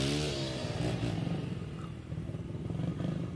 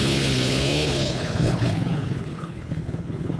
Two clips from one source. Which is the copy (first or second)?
second